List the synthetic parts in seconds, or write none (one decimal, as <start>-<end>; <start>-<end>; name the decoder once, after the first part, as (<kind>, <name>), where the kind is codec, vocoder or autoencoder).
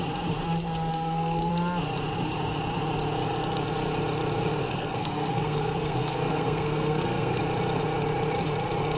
0.9-1.5 (codec, SNAC); 4.6-7.4